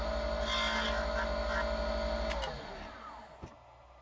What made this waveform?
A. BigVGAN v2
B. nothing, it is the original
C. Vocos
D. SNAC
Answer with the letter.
B